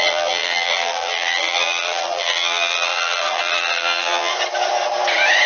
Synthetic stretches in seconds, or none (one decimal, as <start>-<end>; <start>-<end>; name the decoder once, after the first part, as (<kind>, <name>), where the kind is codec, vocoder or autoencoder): 0.0-4.3 (vocoder, BigVGAN v2)